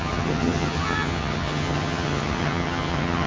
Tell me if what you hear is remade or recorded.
remade